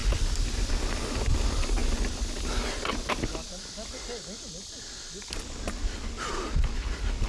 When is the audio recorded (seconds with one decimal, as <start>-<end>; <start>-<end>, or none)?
0.0-7.3